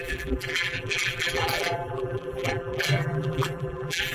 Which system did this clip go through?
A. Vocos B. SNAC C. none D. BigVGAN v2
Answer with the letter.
D